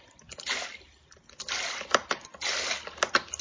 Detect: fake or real real